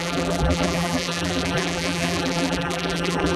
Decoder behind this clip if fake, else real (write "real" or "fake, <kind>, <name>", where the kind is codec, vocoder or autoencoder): fake, vocoder, BigVGAN v2